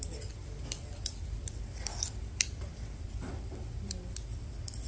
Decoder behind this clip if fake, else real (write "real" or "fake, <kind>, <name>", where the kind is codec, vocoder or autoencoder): real